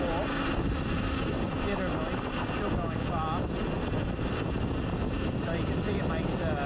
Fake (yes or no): no